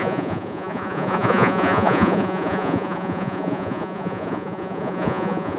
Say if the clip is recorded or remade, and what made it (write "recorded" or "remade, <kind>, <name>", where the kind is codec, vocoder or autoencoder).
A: remade, vocoder, Vocos